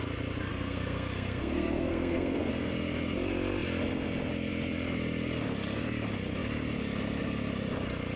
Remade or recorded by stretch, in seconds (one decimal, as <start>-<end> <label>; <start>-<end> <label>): 0.0-0.5 recorded; 0.5-2.5 remade; 2.5-8.2 recorded